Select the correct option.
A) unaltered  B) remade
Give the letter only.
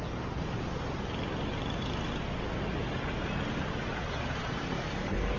A